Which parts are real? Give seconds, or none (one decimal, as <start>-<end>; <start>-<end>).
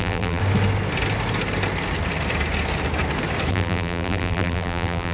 0.4-3.5